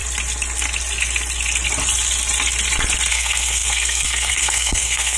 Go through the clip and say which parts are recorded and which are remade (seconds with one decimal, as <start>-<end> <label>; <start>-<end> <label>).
0.0-3.1 recorded; 3.1-5.2 remade